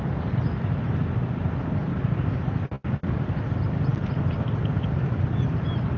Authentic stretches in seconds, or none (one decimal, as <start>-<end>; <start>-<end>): 0.0-6.0